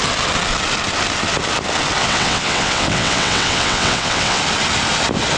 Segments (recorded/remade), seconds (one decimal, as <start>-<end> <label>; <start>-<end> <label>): 0.0-2.0 recorded; 2.0-4.4 remade; 4.4-5.4 recorded